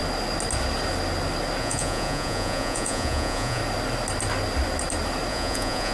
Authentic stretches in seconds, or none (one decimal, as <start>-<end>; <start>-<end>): 0.0-1.6; 3.6-5.3